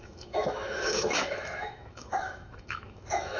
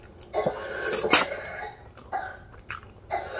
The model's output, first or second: first